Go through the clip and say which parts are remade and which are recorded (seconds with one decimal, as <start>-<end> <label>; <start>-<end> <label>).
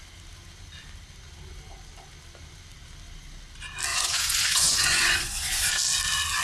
0.0-3.9 recorded; 3.9-5.7 remade; 5.7-6.4 recorded